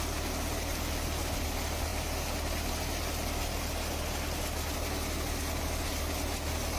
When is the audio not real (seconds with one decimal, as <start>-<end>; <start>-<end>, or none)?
none